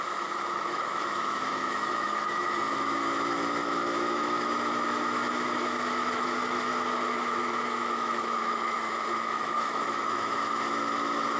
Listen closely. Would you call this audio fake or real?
fake